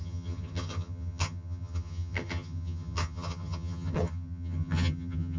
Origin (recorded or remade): remade